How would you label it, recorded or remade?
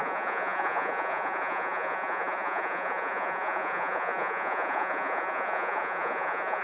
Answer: remade